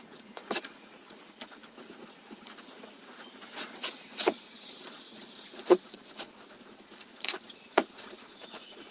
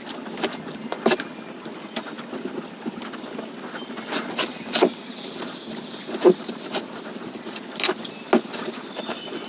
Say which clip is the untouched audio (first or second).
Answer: second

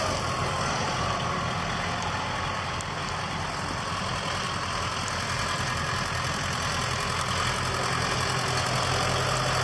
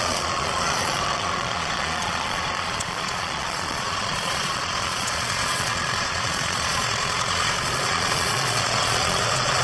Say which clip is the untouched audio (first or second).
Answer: first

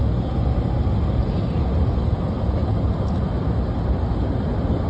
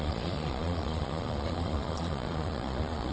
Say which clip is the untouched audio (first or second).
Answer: first